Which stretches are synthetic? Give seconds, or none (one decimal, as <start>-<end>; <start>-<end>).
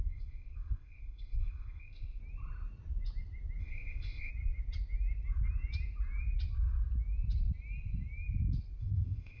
0.0-2.2; 3.6-4.3; 8.8-9.4